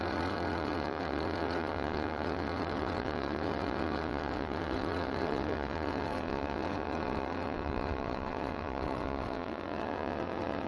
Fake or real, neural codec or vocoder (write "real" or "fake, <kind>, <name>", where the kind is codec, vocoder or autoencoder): fake, vocoder, WaveNeXt